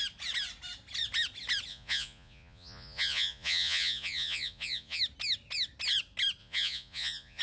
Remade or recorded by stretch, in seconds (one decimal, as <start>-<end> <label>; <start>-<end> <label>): 0.0-1.7 recorded; 1.7-5.0 remade; 5.0-6.4 recorded; 6.4-7.4 remade